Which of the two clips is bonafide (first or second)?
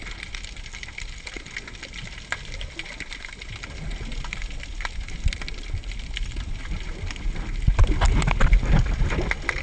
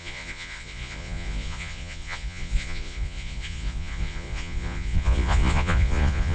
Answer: first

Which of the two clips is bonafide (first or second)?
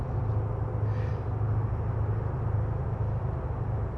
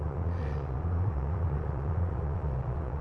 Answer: first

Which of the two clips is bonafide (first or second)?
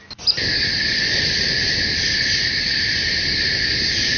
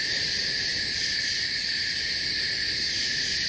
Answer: first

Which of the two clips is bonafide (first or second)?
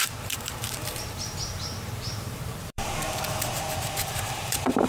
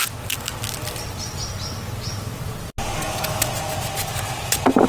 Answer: second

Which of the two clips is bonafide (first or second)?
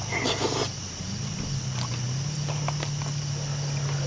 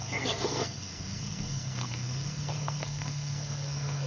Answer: first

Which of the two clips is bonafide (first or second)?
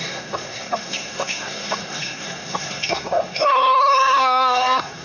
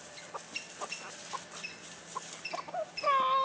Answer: second